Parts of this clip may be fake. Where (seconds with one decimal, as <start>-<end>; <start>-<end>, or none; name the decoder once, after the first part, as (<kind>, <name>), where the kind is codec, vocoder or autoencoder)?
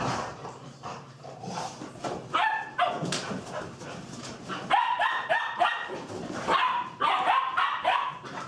0.0-8.5 (vocoder, BigVGAN v2)